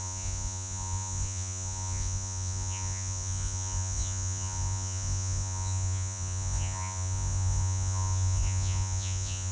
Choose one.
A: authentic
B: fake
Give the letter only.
B